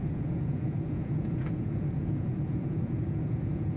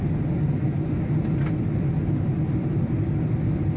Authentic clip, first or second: second